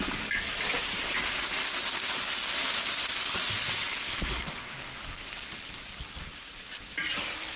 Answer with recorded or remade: remade